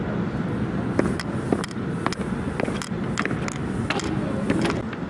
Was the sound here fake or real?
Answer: real